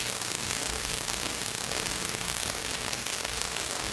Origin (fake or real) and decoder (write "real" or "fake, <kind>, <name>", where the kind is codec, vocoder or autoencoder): fake, codec, DAC